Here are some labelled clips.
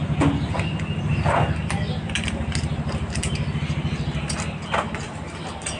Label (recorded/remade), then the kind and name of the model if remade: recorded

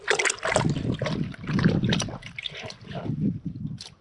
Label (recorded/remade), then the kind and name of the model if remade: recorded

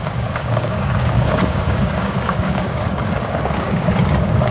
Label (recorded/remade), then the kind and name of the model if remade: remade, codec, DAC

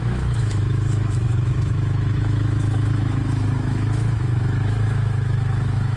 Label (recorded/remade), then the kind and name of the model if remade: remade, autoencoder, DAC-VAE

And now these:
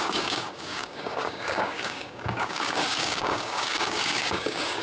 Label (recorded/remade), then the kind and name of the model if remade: remade, codec, DAC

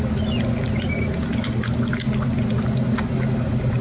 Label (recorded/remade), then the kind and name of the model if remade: recorded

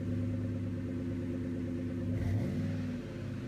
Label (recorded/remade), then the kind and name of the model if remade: recorded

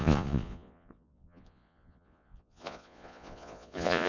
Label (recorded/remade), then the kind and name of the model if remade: remade, vocoder, Vocos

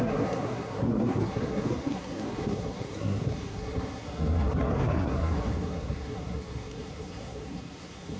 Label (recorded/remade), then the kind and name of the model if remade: remade, codec, SNAC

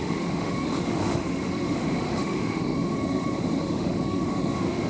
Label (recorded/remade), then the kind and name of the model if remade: remade, autoencoder, DAC-VAE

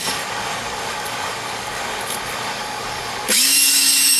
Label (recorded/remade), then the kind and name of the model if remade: remade, codec, DAC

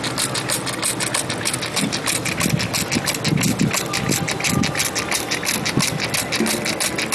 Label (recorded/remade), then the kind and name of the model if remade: recorded